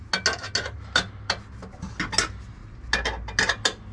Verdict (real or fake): real